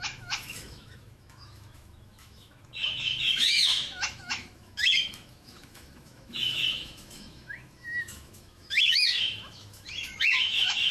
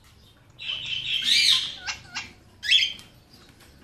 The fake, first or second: first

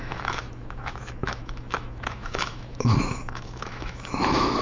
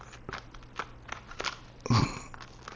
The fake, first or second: first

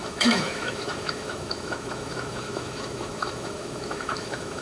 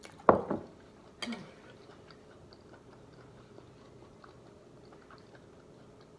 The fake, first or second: first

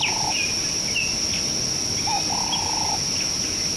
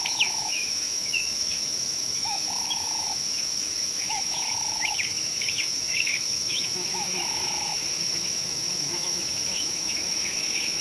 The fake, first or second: second